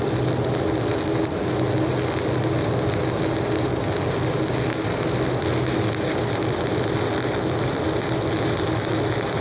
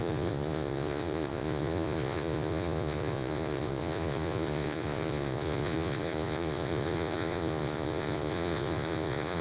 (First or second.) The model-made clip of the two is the second